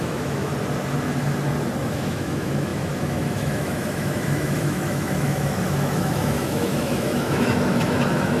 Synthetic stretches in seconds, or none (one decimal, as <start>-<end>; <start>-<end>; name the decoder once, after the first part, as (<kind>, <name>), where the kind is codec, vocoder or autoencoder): 0.0-0.5 (autoencoder, DAC-VAE); 1.8-8.4